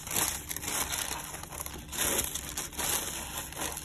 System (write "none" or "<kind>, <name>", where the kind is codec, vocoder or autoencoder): none